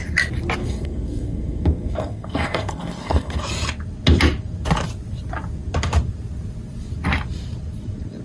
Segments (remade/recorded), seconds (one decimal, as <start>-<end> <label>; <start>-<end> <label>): 0.0-0.6 recorded; 0.6-3.4 remade; 3.4-8.2 recorded